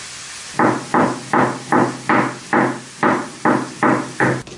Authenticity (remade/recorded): recorded